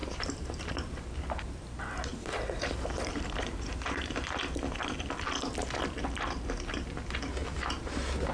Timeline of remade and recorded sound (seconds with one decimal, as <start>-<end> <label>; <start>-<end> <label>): 0.0-0.7 remade; 0.7-2.1 recorded; 2.1-4.0 remade; 4.0-8.3 recorded